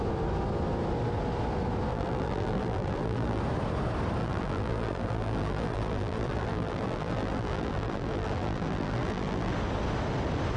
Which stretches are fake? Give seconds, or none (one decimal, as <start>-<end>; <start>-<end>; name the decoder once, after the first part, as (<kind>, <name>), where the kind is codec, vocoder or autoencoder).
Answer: 1.9-3.4 (vocoder, BigVGAN v2); 4.2-9.5